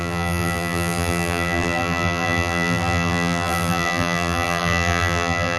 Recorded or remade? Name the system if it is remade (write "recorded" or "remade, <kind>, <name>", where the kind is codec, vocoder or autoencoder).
remade, vocoder, BigVGAN v2